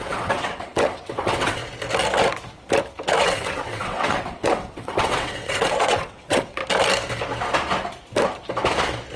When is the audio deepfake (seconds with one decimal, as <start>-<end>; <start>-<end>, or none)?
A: 0.0-1.6; 3.2-6.6